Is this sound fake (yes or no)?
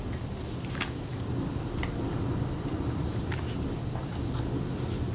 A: no